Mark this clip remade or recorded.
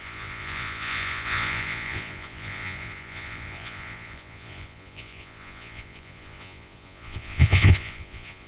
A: remade